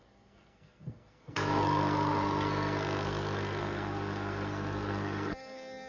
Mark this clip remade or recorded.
remade